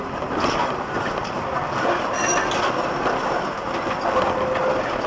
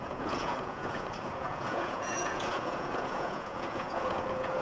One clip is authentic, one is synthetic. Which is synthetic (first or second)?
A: second